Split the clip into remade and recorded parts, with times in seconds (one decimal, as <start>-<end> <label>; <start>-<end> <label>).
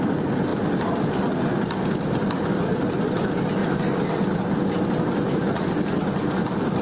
0.0-6.8 recorded